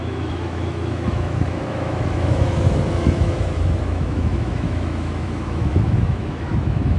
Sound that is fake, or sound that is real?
fake